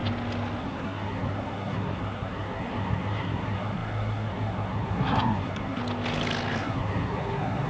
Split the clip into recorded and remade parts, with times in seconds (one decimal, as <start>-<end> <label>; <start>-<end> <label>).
0.0-0.6 recorded; 0.6-5.8 remade; 5.8-6.6 recorded; 6.6-7.7 remade